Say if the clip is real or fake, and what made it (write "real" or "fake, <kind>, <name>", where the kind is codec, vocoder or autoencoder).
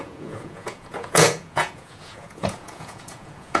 fake, vocoder, Vocos